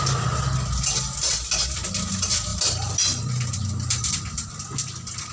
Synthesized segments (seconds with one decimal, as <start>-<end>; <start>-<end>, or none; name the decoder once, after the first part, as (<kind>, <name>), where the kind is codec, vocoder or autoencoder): 2.5-4.1 (vocoder, BigVGAN v2)